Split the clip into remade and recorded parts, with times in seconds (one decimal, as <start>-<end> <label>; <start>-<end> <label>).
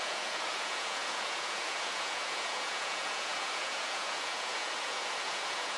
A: 0.0-5.8 remade